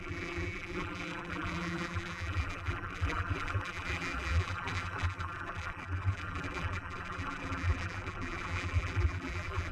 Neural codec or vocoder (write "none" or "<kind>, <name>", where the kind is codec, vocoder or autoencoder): vocoder, BigVGAN v2